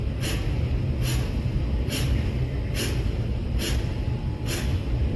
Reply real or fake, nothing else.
real